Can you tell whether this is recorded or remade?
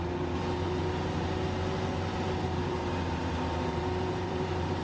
remade